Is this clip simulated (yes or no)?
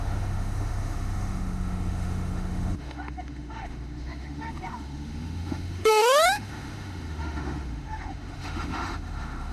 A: yes